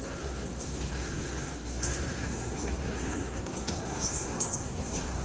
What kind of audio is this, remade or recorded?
remade